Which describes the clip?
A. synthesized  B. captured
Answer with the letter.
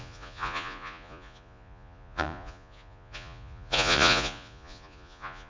A